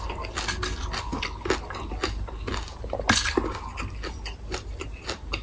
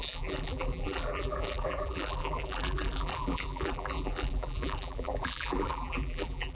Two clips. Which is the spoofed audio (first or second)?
second